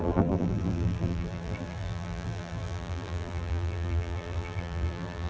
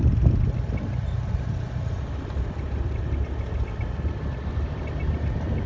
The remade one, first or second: first